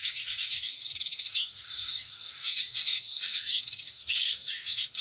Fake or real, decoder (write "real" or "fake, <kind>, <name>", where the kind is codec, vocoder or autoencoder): fake, codec, DAC